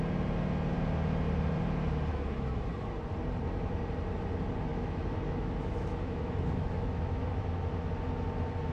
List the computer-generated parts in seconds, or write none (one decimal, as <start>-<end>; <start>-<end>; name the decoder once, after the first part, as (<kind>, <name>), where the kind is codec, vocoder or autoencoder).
2.1-2.7 (autoencoder, DAC-VAE); 4.7-7.4

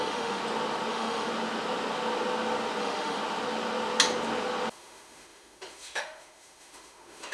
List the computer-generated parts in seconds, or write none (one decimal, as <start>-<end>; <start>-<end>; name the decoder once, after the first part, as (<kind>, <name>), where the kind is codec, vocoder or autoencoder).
0.0-0.4 (autoencoder, DAC-VAE); 0.9-1.3; 2.8-3.2; 4.7-7.3

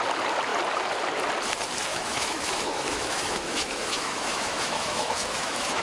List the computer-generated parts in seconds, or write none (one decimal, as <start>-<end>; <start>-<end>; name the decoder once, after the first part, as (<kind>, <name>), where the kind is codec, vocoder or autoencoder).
1.9-5.8 (autoencoder, DAC-VAE)

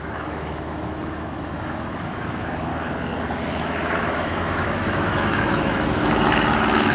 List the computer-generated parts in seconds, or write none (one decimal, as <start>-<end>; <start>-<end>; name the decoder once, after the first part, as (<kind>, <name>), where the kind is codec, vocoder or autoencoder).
0.0-2.7 (autoencoder, DAC-VAE); 3.6-6.9